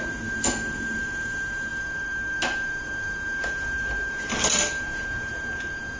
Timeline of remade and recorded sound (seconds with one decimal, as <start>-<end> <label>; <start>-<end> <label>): 0.0-6.0 recorded